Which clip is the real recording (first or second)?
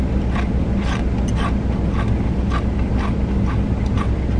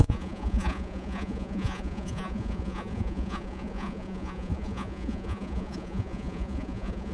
first